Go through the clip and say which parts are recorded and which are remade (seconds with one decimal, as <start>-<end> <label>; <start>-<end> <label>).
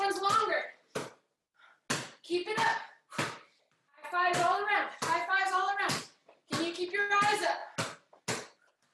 0.0-8.9 recorded